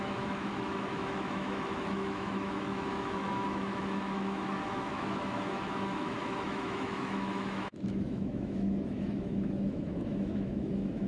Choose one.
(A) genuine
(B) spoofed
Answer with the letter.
B